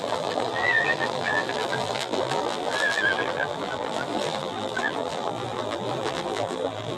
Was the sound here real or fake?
fake